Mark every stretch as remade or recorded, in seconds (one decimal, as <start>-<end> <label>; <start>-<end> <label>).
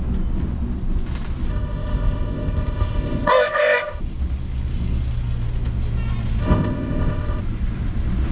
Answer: 0.0-1.5 recorded; 1.5-4.0 remade; 4.0-6.4 recorded; 6.4-7.4 remade; 7.4-8.3 recorded